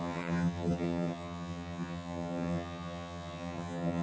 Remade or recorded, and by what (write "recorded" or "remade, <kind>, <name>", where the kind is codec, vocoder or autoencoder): remade, vocoder, HiFi-GAN